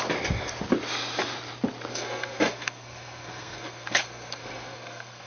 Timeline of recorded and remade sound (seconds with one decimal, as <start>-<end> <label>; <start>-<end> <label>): 0.0-1.9 recorded; 1.9-5.3 remade